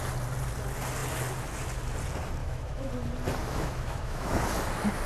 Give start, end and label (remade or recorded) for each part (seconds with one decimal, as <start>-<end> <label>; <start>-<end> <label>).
0.0-2.4 recorded; 2.4-2.9 remade; 2.9-3.4 recorded; 3.4-4.4 remade; 4.4-5.1 recorded